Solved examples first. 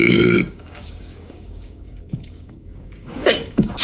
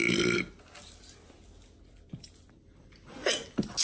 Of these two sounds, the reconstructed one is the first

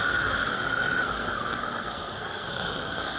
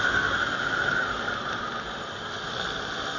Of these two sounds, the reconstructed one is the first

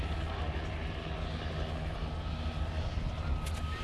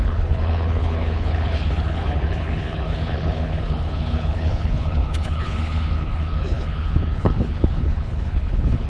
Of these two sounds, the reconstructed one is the second